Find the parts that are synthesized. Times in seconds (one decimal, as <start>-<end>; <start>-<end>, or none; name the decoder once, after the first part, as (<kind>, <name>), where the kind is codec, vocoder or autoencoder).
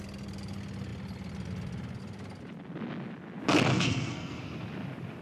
3.7-4.4 (codec, SNAC)